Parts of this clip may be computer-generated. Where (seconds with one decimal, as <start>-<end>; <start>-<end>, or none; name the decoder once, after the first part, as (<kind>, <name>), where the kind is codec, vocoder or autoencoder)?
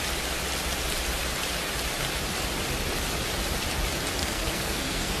4.2-5.2 (codec, SNAC)